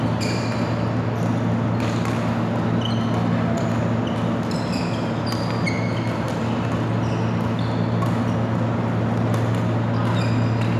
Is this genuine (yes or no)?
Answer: yes